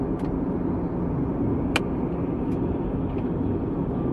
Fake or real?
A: real